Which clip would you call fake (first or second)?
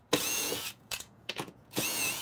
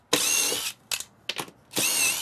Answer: first